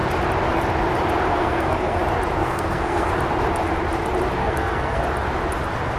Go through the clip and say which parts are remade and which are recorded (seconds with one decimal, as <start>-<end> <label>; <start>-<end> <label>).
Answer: 0.0-1.3 recorded; 1.3-2.0 remade; 2.0-2.4 recorded; 2.4-3.1 remade; 3.1-4.4 recorded; 4.4-5.0 remade; 5.0-6.0 recorded